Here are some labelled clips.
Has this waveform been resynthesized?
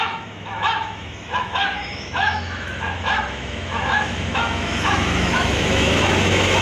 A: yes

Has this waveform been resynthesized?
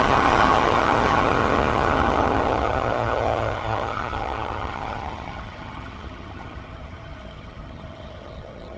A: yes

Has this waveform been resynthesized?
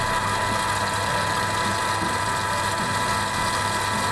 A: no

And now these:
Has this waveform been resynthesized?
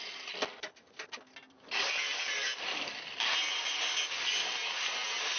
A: no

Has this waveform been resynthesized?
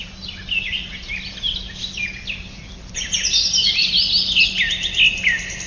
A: no